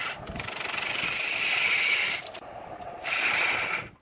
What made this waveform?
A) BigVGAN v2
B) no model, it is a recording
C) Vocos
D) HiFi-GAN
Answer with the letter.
B